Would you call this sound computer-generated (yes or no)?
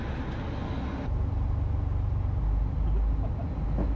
no